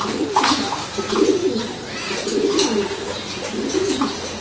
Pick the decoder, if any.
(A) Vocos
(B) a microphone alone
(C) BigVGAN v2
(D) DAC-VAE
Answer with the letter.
B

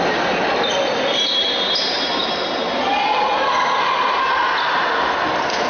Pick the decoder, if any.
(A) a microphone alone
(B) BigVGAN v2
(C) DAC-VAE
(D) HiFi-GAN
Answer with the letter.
A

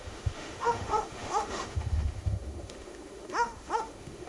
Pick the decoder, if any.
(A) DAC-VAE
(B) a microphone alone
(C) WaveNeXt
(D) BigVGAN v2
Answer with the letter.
A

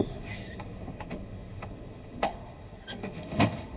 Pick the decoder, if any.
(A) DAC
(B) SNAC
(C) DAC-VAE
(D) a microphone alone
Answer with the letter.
C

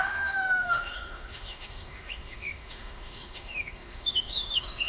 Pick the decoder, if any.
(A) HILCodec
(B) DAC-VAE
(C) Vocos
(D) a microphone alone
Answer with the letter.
B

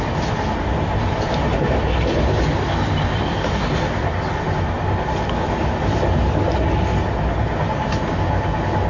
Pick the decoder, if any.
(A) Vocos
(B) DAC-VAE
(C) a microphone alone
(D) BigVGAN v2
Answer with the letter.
C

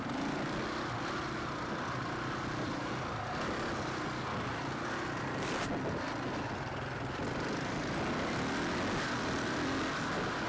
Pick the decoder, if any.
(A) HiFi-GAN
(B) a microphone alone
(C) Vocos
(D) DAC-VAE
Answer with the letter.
B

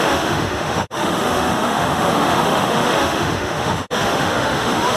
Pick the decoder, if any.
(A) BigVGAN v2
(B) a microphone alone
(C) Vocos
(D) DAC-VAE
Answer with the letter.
D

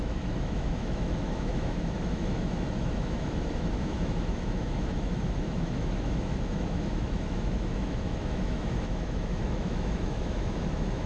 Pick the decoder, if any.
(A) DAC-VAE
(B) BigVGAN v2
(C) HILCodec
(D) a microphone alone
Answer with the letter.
A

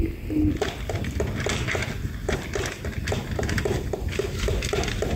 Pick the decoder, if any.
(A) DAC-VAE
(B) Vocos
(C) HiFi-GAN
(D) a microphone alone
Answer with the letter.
D